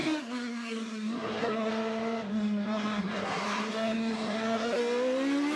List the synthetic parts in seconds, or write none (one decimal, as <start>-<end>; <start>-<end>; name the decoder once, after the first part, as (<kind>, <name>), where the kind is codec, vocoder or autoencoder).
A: 0.0-1.7 (codec, SNAC); 2.3-4.8